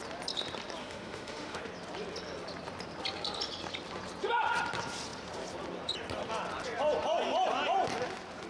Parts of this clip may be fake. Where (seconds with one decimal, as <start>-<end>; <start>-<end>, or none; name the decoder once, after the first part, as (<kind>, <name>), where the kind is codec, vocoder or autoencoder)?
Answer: 0.8-1.6 (autoencoder, DAC-VAE)